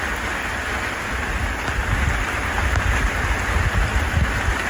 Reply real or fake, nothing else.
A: real